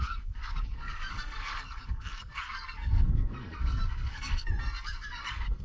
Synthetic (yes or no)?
yes